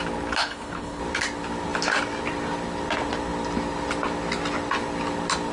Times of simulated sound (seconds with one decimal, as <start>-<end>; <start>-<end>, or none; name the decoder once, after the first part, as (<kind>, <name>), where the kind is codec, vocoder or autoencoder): 0.4-1.0 (codec, HILCodec)